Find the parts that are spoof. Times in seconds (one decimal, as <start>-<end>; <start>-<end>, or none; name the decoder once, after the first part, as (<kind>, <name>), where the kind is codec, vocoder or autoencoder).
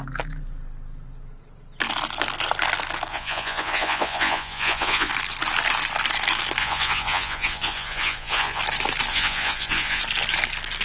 3.1-5.1 (vocoder, Vocos); 6.6-8.6; 9.1-10.0